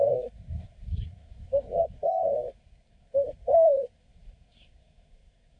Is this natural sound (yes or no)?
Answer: no